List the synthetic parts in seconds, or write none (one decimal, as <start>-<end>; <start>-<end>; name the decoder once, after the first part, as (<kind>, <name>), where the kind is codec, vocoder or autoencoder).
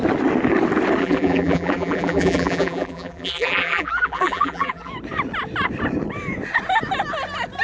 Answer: 1.0-4.9 (vocoder, BigVGAN v2)